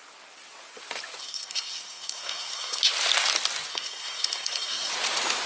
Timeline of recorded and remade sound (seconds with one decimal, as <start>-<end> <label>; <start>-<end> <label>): 0.0-1.2 recorded; 1.2-2.8 remade; 2.8-3.7 recorded; 3.7-4.9 remade; 4.9-5.5 recorded